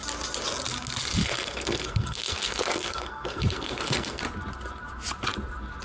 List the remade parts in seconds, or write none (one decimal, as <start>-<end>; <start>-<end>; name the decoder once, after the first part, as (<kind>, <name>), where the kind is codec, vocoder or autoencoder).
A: 1.2-4.2 (codec, SNAC)